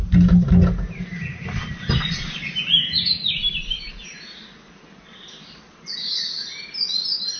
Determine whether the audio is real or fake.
real